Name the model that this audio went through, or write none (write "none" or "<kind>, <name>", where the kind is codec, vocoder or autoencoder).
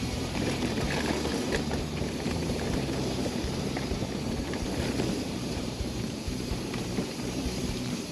vocoder, BigVGAN v2